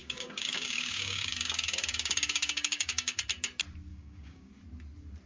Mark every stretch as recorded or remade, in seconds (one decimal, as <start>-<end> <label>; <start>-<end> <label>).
0.0-3.2 remade; 3.2-3.9 recorded; 3.9-4.5 remade; 4.5-5.3 recorded